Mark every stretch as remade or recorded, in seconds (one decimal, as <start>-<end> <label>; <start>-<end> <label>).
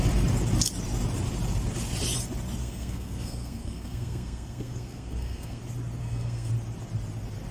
0.0-2.6 recorded; 2.6-5.6 remade; 5.6-6.0 recorded; 6.0-6.5 remade; 6.5-7.5 recorded